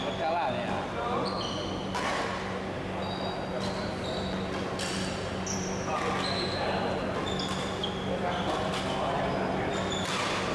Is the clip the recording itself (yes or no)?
yes